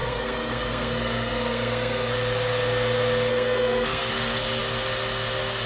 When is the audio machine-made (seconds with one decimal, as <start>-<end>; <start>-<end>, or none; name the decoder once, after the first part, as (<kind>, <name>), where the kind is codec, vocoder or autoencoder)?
0.0-2.1 (codec, SNAC); 3.3-4.1